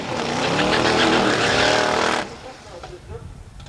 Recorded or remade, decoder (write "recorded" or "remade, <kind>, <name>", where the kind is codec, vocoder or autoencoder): recorded